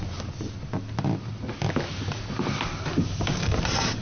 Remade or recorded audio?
recorded